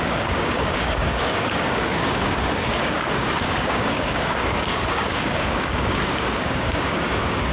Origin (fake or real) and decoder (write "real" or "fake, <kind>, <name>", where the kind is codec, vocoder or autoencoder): fake, codec, DAC